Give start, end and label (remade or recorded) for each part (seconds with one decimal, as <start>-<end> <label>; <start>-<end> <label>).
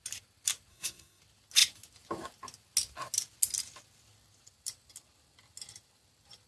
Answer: 0.0-0.7 recorded; 0.7-1.2 remade; 1.2-6.5 recorded